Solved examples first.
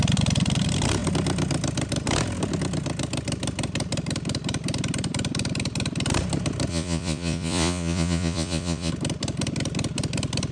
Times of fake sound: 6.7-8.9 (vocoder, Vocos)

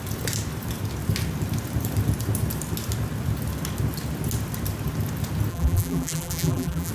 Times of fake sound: 5.5-6.9 (vocoder, BigVGAN v2)

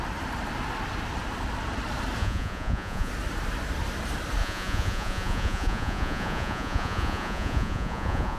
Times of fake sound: 2.2-3.1 (vocoder, Vocos); 4.4-8.4

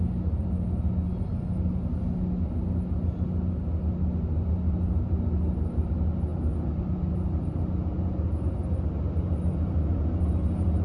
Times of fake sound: none